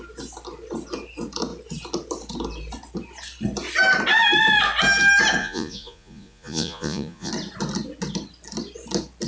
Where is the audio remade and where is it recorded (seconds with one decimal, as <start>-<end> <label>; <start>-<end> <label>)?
0.0-5.4 recorded; 5.4-7.3 remade; 7.3-9.3 recorded